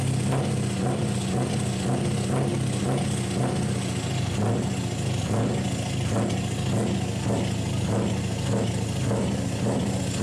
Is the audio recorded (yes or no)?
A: yes